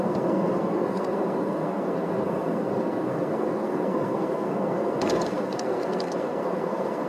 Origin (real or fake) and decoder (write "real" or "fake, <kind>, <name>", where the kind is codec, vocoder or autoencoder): fake, codec, SNAC